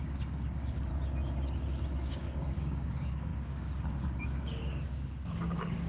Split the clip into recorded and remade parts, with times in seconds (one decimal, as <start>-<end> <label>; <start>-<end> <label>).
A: 0.0-0.9 remade; 0.9-2.1 recorded; 2.1-5.9 remade

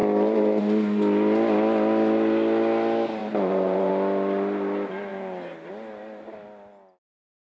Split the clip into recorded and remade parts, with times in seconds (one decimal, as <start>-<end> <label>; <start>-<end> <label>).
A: 0.0-0.6 remade; 0.6-3.2 recorded; 3.2-3.9 remade; 3.9-7.6 recorded